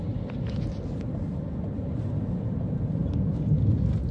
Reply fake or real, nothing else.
real